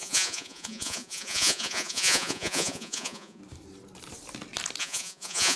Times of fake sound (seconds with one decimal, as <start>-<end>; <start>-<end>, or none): 0.0-3.4; 4.8-5.6